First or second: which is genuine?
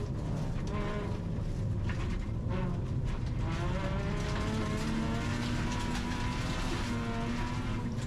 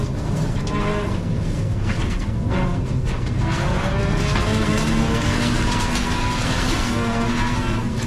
first